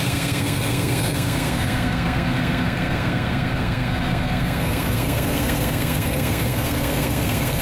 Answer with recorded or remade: remade